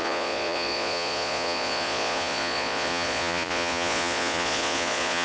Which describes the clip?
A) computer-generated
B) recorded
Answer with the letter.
A